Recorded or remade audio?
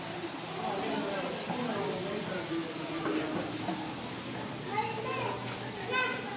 recorded